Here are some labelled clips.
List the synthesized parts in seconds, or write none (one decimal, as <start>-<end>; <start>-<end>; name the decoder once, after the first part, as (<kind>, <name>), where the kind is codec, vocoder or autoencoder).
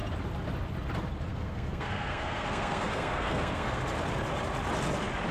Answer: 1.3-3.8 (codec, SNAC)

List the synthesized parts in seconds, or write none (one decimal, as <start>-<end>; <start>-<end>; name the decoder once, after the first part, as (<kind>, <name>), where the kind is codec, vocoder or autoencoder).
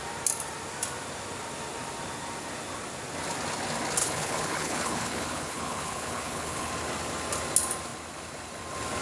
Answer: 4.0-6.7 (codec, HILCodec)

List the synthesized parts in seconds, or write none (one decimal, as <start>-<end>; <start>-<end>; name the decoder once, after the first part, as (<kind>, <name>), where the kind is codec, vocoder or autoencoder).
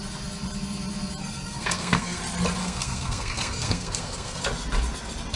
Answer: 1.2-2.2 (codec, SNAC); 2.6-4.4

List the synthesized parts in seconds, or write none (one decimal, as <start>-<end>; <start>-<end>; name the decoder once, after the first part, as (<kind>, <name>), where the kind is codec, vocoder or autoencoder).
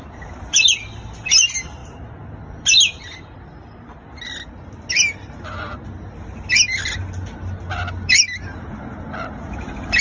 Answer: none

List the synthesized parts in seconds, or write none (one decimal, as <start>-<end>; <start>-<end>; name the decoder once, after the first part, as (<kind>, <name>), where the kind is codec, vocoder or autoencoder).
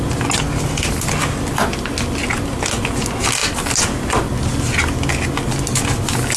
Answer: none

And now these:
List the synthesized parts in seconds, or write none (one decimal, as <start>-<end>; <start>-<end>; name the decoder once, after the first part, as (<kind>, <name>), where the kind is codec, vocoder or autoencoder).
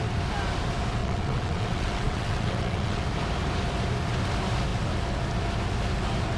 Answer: 1.0-3.0 (vocoder, WaveNeXt)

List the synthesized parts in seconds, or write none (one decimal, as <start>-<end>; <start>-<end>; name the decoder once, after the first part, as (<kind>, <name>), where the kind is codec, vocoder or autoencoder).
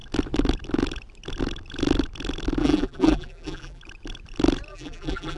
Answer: 2.6-3.8 (vocoder, BigVGAN v2); 4.7-5.4